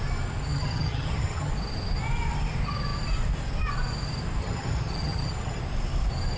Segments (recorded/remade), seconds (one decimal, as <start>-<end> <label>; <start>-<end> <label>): 0.0-0.5 recorded; 0.5-1.5 remade; 1.5-4.4 recorded; 4.4-5.6 remade; 5.6-6.4 recorded